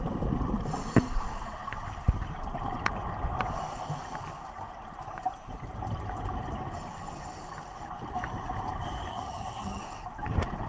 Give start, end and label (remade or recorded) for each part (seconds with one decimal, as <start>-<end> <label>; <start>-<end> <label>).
0.0-9.1 recorded; 9.1-9.8 remade; 9.8-10.7 recorded